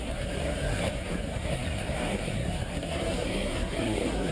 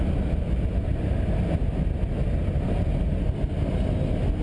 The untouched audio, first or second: second